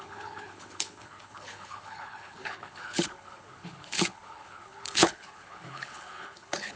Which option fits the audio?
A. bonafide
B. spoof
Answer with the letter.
B